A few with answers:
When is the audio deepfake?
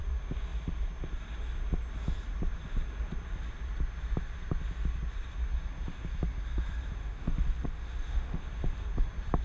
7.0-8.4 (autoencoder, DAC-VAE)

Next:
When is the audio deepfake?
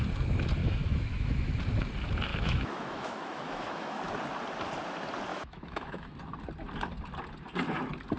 0.6-1.6 (autoencoder, DAC-VAE); 2.3-4.0; 5.3-6.1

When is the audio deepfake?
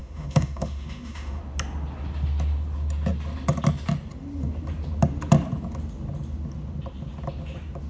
0.0-1.4 (autoencoder, DAC-VAE)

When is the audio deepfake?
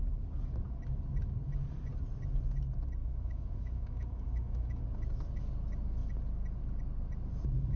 3.0-4.8 (autoencoder, DAC-VAE)